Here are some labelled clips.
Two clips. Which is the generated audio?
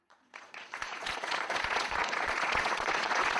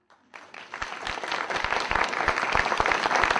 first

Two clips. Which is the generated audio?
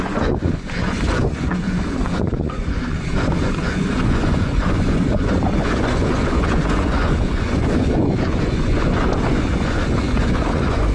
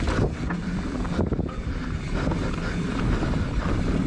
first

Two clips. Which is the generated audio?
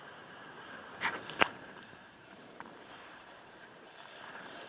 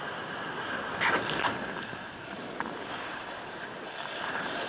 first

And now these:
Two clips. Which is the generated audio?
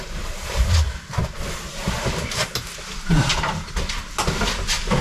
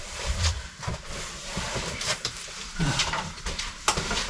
second